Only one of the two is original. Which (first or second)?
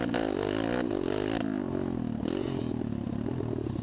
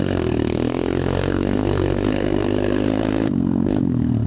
first